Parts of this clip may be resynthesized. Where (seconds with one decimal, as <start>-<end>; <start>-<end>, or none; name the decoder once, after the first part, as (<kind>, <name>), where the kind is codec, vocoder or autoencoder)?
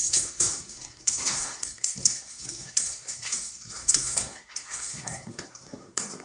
0.0-6.2 (codec, SNAC)